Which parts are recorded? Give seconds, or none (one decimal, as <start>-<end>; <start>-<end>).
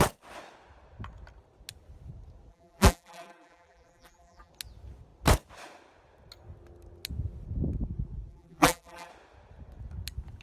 0.0-2.5; 4.5-8.3; 9.1-10.4